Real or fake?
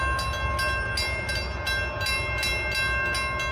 real